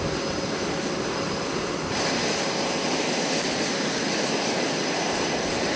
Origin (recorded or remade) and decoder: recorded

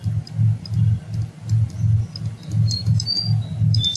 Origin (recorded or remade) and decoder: recorded